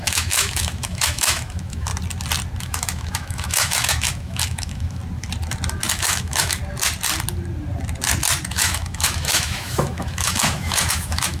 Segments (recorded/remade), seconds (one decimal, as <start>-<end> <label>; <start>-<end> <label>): 0.0-1.9 remade; 1.9-2.6 recorded; 2.6-5.0 remade; 5.0-5.9 recorded; 5.9-6.6 remade; 6.6-8.5 recorded; 8.5-11.4 remade